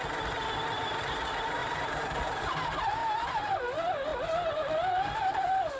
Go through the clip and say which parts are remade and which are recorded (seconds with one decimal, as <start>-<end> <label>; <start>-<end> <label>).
0.0-1.6 recorded; 1.6-2.4 remade; 2.4-3.0 recorded; 3.0-3.5 remade; 3.5-5.8 recorded